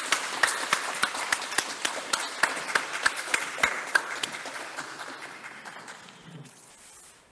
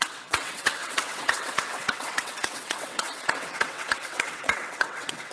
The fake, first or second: second